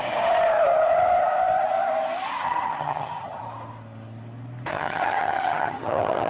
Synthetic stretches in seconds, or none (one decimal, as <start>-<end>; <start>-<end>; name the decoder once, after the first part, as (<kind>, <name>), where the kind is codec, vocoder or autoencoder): 2.4-3.4 (vocoder, HiFi-GAN); 4.7-6.3